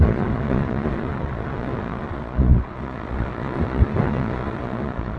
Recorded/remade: remade